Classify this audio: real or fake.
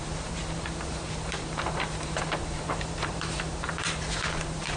fake